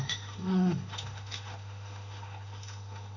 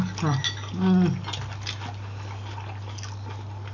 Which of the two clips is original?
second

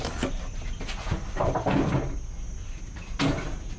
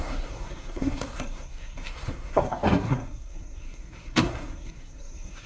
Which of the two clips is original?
first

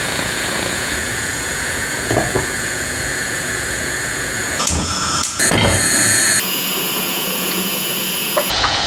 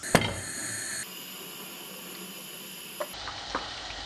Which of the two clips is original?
second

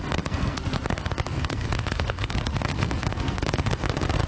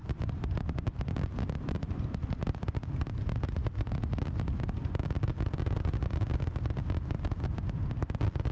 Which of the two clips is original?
second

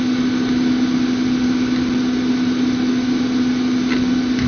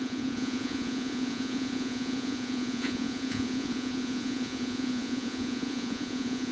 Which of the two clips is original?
first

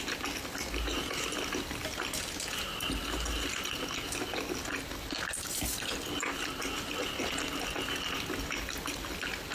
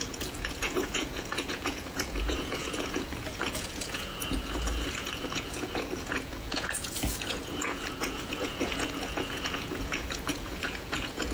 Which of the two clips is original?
first